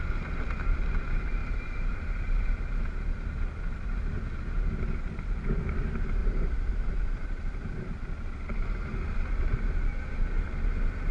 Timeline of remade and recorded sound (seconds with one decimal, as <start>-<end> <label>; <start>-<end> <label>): 0.0-1.4 recorded; 1.4-2.5 remade; 2.5-6.2 recorded; 6.2-6.7 remade; 6.7-11.1 recorded